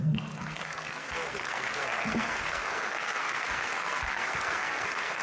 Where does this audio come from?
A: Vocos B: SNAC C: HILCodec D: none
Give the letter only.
B